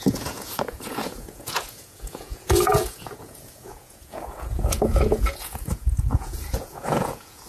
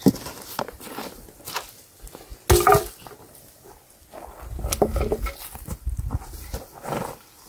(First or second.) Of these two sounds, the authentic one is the second